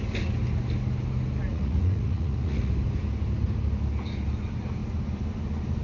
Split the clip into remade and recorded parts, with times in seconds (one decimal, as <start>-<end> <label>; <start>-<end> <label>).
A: 0.0-1.5 recorded; 1.5-2.7 remade; 2.7-5.8 recorded

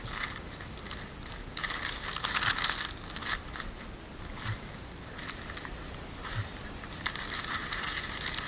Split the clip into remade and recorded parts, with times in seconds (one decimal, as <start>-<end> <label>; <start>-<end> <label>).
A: 0.0-8.5 recorded

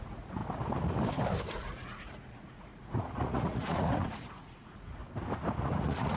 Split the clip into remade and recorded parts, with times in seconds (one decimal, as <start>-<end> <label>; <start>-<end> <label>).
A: 0.0-0.4 remade; 0.4-1.4 recorded; 1.4-5.0 remade; 5.0-5.6 recorded; 5.6-6.2 remade

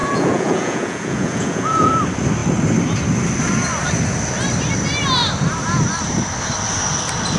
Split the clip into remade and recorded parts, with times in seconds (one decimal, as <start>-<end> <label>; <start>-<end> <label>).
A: 0.0-1.9 remade; 1.9-7.4 recorded

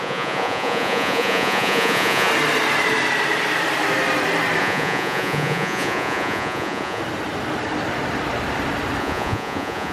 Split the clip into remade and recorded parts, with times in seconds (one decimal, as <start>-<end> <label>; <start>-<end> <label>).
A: 0.0-2.3 remade; 2.3-4.6 recorded; 4.6-7.0 remade; 7.0-9.0 recorded; 9.0-9.9 remade

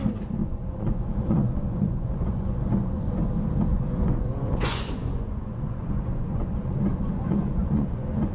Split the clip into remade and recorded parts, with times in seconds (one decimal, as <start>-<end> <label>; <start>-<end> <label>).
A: 0.0-0.4 recorded; 0.4-3.3 remade; 3.3-3.7 recorded; 3.7-8.3 remade

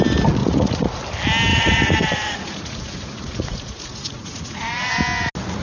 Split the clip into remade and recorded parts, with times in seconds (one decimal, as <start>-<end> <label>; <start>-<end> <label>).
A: 0.0-0.4 recorded; 0.4-1.0 remade; 1.0-1.5 recorded; 1.5-4.9 remade; 4.9-5.6 recorded

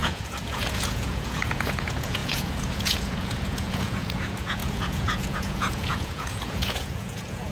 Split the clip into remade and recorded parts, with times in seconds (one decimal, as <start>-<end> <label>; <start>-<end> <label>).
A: 0.0-7.5 remade